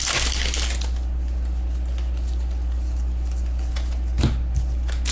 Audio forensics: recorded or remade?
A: recorded